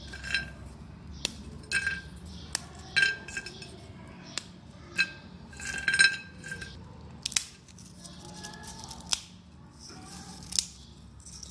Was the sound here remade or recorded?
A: recorded